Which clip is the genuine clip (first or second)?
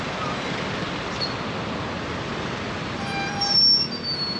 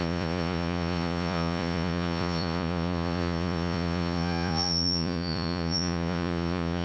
first